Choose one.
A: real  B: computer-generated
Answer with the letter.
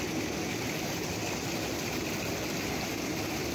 A